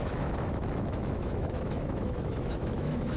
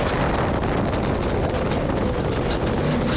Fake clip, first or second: first